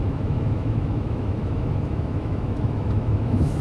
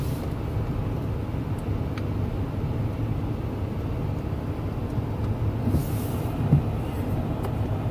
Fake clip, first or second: first